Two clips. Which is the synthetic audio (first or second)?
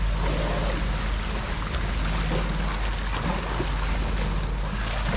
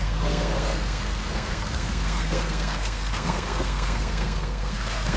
second